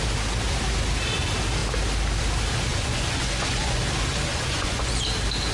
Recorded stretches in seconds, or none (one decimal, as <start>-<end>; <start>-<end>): 0.0-2.7; 3.8-4.3; 5.0-5.5